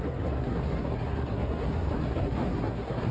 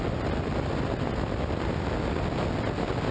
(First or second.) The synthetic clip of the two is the first